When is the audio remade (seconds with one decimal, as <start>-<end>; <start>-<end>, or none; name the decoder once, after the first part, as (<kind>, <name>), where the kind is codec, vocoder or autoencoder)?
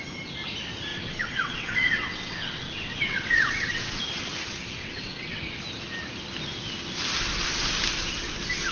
0.9-4.0 (vocoder, WaveNeXt); 4.8-5.4